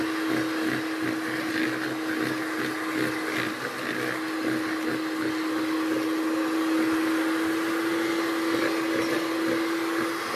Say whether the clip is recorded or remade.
recorded